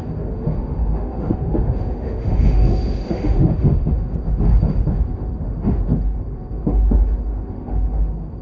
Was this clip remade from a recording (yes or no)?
yes